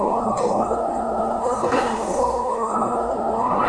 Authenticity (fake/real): fake